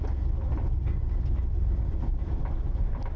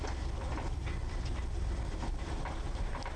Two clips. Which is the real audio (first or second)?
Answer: first